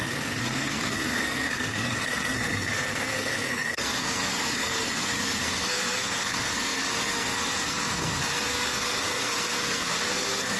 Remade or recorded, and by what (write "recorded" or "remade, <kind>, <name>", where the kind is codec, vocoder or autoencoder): remade, codec, SNAC